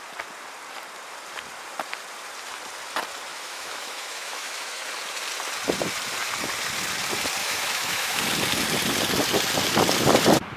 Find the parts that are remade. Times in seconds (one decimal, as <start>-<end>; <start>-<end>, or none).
3.3-4.8; 7.4-8.2